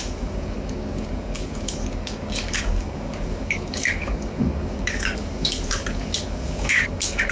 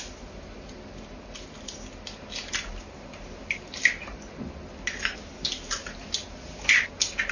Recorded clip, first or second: second